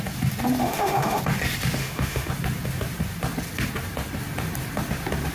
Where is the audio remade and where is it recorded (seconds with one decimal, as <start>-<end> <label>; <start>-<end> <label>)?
0.0-0.6 recorded; 0.6-1.2 remade; 1.2-1.8 recorded; 1.8-2.3 remade; 2.3-5.3 recorded